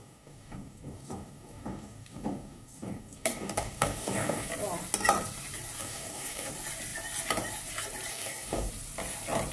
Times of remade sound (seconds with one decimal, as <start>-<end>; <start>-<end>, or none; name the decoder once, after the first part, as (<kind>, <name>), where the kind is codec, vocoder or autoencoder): 0.0-4.5 (codec, DAC); 5.8-6.5; 8.1-8.7